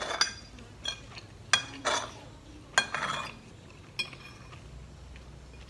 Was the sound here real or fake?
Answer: real